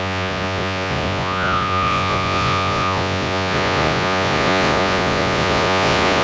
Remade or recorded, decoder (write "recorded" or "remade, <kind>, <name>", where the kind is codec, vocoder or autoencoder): remade, vocoder, Vocos